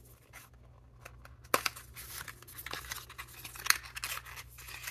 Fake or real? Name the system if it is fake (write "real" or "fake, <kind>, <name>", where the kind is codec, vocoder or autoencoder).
real